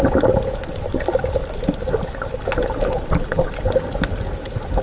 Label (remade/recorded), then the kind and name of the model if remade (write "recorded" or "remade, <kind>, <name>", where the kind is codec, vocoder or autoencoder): recorded